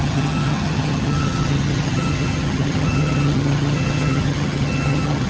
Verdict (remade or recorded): remade